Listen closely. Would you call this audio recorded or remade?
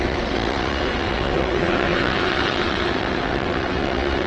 remade